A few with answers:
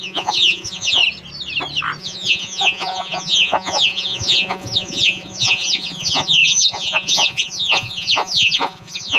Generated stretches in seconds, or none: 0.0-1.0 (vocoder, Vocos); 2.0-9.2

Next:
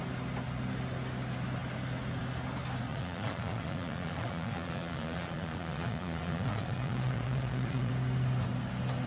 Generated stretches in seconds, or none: 2.9-7.9 (vocoder, Vocos)

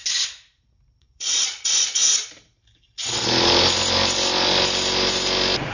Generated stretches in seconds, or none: 1.0-2.0 (vocoder, Vocos)

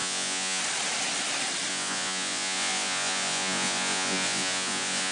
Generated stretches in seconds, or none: 0.0-0.6 (vocoder, Vocos); 1.7-5.1

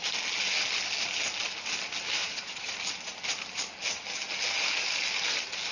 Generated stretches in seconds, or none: 2.2-2.7 (vocoder, Vocos)